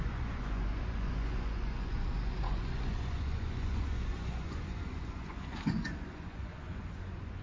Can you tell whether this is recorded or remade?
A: remade